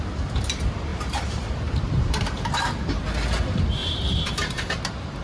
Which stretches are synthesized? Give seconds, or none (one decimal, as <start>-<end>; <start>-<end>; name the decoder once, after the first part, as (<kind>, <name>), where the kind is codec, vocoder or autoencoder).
0.9-3.0 (vocoder, BigVGAN v2); 3.8-4.3

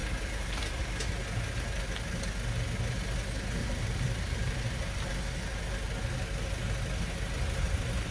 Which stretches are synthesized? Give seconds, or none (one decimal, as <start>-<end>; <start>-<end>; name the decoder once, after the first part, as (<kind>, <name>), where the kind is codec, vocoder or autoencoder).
0.0-0.8 (vocoder, BigVGAN v2); 3.6-5.1

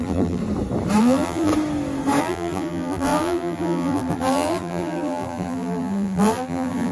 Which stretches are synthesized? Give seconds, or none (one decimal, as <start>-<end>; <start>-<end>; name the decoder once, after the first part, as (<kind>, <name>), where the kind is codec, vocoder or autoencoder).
0.0-0.4 (vocoder, BigVGAN v2); 1.0-1.5; 2.2-6.9